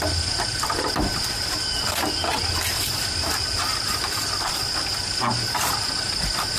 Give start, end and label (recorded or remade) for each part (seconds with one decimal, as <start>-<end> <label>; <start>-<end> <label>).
0.0-6.6 recorded